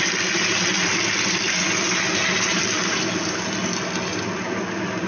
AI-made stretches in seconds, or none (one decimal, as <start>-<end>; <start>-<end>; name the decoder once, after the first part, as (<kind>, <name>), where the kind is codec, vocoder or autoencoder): none